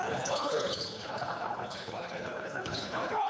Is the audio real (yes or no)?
no